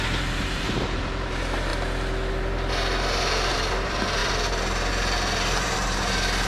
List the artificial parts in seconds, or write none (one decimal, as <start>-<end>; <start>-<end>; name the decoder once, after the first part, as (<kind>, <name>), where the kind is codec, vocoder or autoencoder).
0.0-1.7 (vocoder, BigVGAN v2); 2.3-6.5